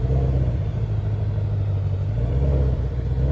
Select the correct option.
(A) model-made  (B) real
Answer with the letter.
A